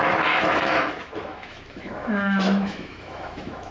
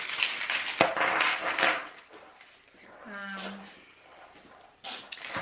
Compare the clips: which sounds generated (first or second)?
first